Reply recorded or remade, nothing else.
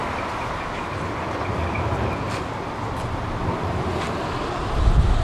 recorded